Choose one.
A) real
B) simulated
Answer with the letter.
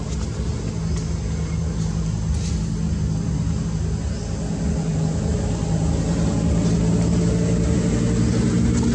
A